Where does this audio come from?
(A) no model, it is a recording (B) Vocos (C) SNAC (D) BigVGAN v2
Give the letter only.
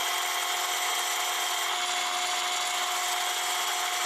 A